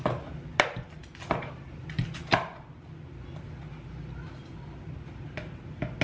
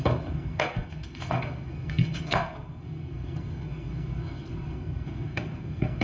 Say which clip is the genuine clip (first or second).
first